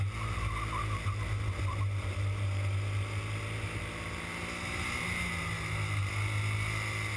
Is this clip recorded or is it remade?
recorded